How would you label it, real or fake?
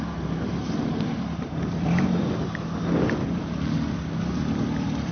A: real